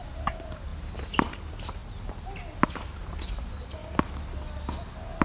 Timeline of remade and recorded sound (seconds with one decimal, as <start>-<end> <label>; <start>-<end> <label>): 0.0-1.8 remade; 1.8-2.7 recorded; 2.7-3.8 remade; 3.8-5.2 recorded